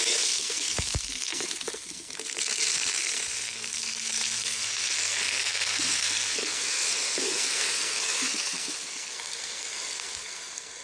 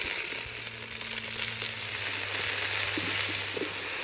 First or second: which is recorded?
second